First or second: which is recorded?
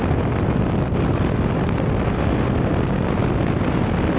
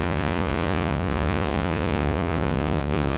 first